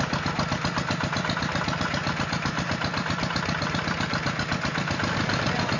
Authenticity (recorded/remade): recorded